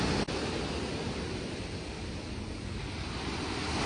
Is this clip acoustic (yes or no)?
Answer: yes